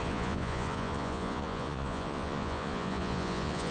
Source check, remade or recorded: remade